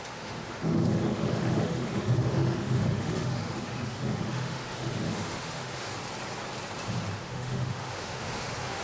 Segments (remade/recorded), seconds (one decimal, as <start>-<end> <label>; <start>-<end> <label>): 0.0-5.9 remade; 5.9-7.2 recorded; 7.2-8.8 remade